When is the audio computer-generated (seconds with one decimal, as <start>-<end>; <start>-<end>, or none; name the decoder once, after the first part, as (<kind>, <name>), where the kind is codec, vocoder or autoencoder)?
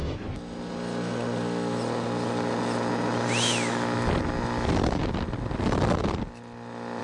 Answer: none